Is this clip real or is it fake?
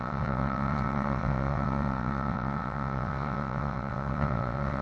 fake